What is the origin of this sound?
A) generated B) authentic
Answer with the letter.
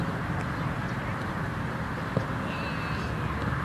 B